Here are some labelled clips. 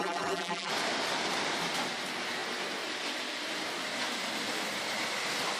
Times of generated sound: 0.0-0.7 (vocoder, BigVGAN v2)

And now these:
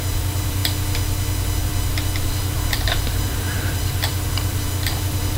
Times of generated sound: 0.0-0.6 (vocoder, BigVGAN v2); 1.6-5.4

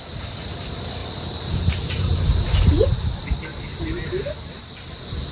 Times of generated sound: 1.0-2.7 (vocoder, BigVGAN v2); 3.5-4.3

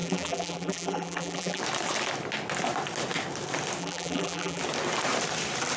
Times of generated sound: 0.0-1.6 (vocoder, BigVGAN v2); 3.8-4.6

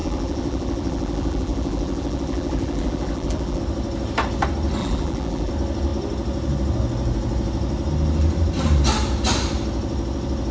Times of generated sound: 0.0-3.6 (vocoder, BigVGAN v2); 4.8-5.5

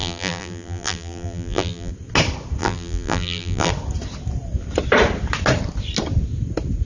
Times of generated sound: 0.0-1.9 (vocoder, BigVGAN v2); 2.6-3.7

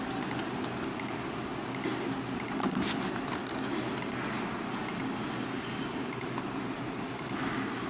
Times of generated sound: none

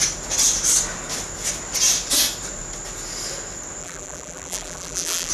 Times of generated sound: 3.8-5.3 (vocoder, BigVGAN v2)